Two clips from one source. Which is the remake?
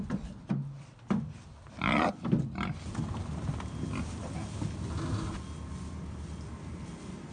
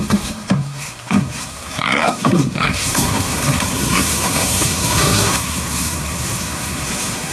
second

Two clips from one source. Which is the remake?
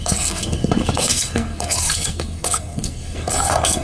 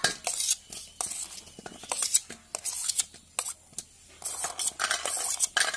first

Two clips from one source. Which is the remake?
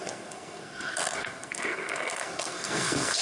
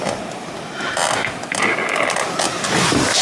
first